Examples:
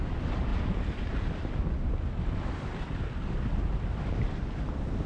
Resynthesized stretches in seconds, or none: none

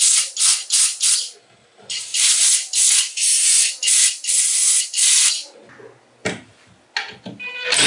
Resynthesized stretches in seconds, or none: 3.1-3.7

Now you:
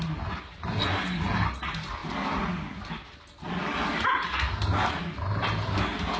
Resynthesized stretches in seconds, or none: none

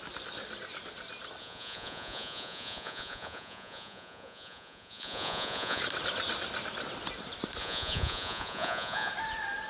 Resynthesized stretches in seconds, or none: 1.4-5.8; 7.6-9.1